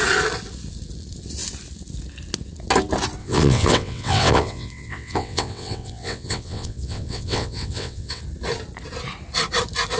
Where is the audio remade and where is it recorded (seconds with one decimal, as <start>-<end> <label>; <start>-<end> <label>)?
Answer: 0.0-3.2 recorded; 3.2-8.2 remade; 8.2-10.0 recorded